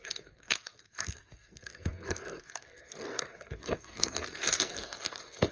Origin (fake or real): fake